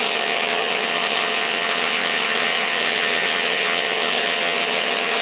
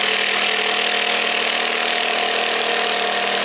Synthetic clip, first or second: first